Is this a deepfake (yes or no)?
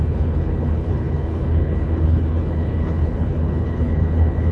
yes